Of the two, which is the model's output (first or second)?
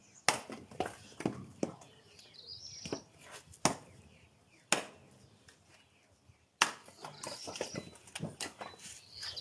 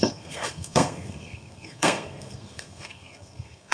second